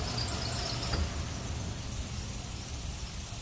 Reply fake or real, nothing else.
real